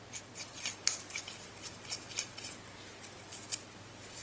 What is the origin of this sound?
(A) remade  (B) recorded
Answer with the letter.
B